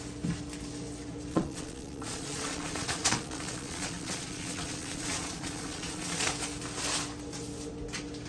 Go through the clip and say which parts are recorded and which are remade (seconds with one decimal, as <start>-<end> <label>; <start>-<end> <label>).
0.0-1.3 recorded; 1.3-6.3 remade; 6.3-8.3 recorded